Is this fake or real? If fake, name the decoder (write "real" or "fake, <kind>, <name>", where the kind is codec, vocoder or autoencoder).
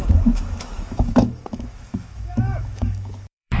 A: fake, autoencoder, DAC-VAE